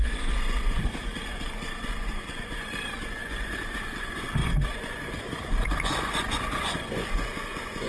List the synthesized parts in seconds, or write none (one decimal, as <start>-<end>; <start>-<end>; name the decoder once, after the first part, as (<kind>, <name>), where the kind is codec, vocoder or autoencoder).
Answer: 0.0-7.9 (vocoder, Vocos)

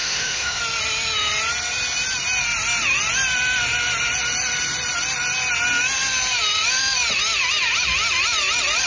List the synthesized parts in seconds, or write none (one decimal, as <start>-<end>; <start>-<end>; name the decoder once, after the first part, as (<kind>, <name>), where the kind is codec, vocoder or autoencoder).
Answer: 0.0-0.6 (autoencoder, DAC-VAE)

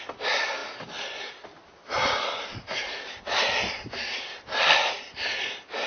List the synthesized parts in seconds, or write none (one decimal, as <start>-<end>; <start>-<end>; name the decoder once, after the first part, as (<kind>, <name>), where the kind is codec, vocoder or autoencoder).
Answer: 2.0-3.2 (vocoder, Vocos)

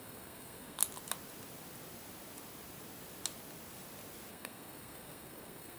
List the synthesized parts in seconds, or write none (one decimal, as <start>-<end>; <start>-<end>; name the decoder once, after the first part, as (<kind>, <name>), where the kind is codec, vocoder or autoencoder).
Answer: 0.0-0.8 (codec, SNAC); 4.3-5.8

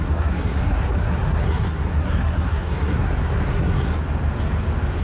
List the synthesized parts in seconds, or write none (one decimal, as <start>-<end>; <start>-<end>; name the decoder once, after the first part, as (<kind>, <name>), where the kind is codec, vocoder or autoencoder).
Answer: 0.0-4.0 (codec, SNAC)

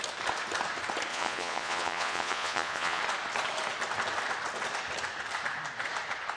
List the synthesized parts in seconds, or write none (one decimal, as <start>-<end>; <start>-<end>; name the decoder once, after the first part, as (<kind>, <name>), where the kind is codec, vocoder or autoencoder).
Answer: 1.1-3.0 (vocoder, Vocos)